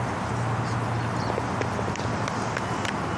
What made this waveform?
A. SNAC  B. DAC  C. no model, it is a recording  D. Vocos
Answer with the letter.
C